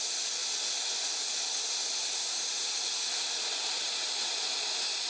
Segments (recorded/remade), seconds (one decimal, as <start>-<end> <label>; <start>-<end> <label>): 0.0-2.3 recorded; 2.3-4.1 remade; 4.1-5.1 recorded